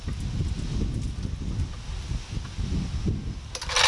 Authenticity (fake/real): real